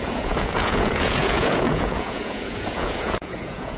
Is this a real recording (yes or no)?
no